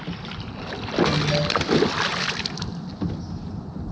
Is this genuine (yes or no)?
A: yes